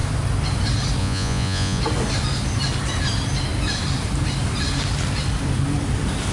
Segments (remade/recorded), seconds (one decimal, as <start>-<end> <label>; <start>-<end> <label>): 0.0-1.0 recorded; 1.0-1.8 remade; 1.8-6.3 recorded